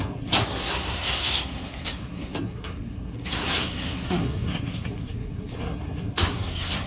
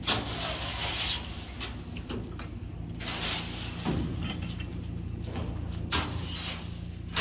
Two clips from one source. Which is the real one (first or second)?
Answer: second